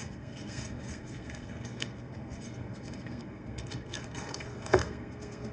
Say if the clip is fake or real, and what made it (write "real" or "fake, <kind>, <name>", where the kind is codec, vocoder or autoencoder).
fake, codec, SNAC